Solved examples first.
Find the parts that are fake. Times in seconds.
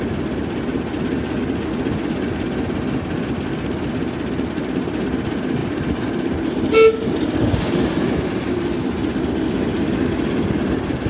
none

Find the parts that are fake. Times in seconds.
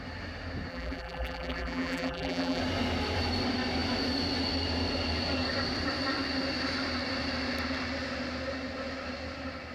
0.7-2.6 (vocoder, BigVGAN v2)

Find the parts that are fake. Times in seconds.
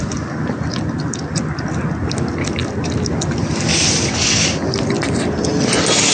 none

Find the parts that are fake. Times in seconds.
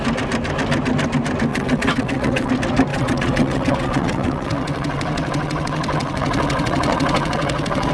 1.5-2.5 (vocoder, WaveNeXt); 2.9-7.9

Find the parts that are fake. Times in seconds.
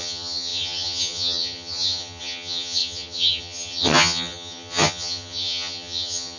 0.0-6.4 (vocoder, HiFi-GAN)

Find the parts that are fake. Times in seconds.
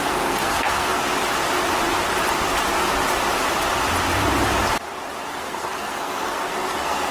0.0-1.0 (codec, SNAC); 5.3-7.1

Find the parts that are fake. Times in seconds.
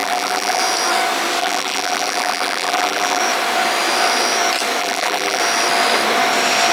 0.0-0.6 (vocoder, BigVGAN v2); 1.4-3.2; 4.8-5.4